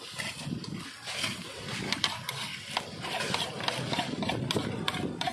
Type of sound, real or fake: real